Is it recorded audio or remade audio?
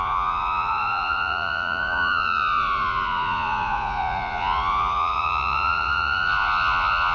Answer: remade